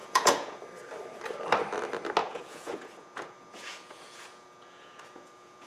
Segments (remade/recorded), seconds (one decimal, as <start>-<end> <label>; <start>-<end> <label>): 0.0-0.6 remade; 0.6-2.2 recorded; 2.2-5.7 remade

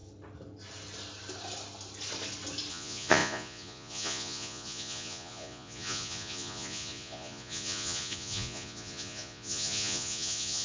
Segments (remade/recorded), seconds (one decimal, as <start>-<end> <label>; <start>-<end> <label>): 0.0-2.7 recorded; 2.7-10.6 remade

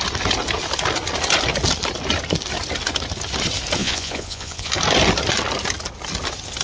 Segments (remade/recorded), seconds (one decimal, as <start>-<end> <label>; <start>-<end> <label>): 0.0-3.8 recorded; 3.8-4.7 remade; 4.7-6.6 recorded

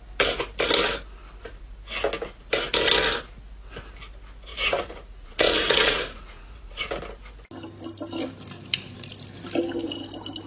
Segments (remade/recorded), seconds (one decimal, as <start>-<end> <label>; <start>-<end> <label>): 0.0-4.5 recorded; 4.5-6.9 remade; 6.9-10.5 recorded

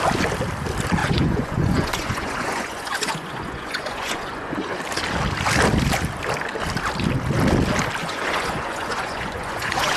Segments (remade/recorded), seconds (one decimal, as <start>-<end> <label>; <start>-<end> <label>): 0.0-1.0 recorded; 1.0-4.8 remade; 4.8-8.0 recorded; 8.0-10.0 remade

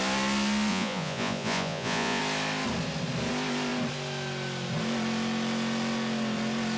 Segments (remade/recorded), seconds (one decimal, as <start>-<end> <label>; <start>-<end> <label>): 0.0-0.7 recorded; 0.7-2.2 remade; 2.2-6.8 recorded